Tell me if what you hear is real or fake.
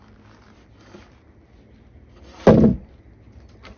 real